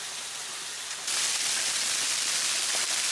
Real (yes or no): yes